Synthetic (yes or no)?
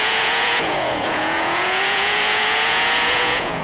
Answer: yes